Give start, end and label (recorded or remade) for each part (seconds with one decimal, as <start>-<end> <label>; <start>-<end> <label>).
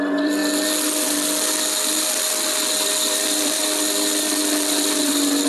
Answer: 0.0-0.4 remade; 0.4-3.1 recorded; 3.1-4.4 remade; 4.4-5.0 recorded; 5.0-5.5 remade